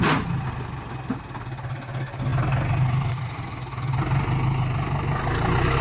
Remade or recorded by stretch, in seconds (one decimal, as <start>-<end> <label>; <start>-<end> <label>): 0.0-2.3 recorded; 2.3-4.0 remade; 4.0-5.8 recorded